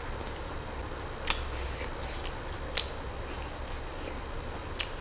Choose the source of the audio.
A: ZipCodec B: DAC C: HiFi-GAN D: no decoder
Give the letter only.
D